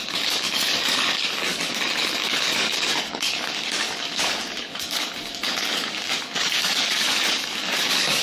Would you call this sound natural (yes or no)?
no